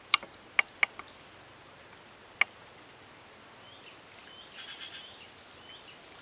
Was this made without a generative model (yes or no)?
yes